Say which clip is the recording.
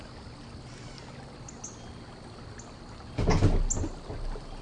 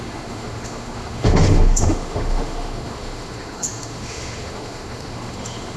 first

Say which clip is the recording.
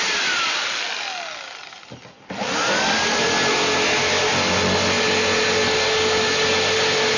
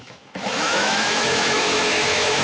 first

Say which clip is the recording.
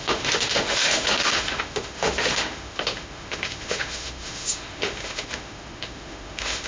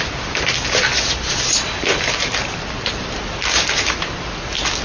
second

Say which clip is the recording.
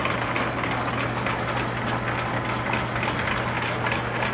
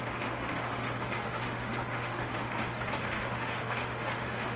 first